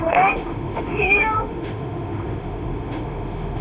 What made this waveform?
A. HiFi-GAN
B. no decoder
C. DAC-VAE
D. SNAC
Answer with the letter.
C